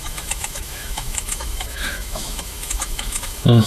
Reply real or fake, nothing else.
fake